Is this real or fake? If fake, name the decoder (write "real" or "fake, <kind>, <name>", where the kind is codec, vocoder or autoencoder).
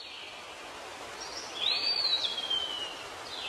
real